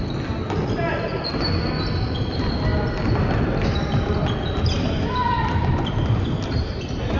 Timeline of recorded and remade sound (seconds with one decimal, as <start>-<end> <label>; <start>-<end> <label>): 0.0-7.2 recorded